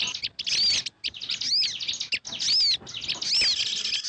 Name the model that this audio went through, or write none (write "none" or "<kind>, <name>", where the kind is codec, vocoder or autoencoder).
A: none